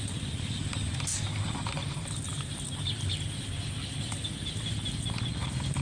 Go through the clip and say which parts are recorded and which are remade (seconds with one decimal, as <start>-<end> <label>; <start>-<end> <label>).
0.0-5.8 recorded